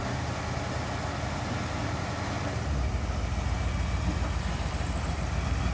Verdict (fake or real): real